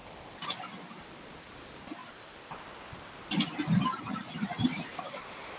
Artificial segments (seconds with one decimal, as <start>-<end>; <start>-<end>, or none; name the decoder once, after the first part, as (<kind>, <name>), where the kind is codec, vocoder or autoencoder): 0.0-5.6 (vocoder, BigVGAN v2)